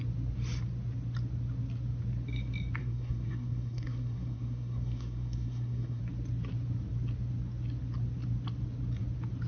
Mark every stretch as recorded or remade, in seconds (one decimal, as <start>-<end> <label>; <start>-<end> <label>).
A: 0.0-2.8 recorded; 2.8-6.0 remade; 6.0-9.5 recorded